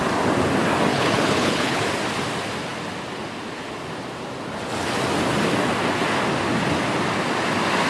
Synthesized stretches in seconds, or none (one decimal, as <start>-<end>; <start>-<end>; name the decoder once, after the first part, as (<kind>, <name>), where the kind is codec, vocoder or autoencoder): 0.9-1.8 (codec, HILCodec)